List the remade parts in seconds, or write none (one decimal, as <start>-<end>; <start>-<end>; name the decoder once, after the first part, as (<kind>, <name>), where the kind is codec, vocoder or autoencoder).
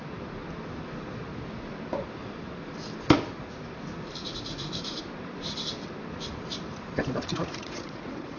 4.2-5.0 (vocoder, Vocos); 7.3-8.4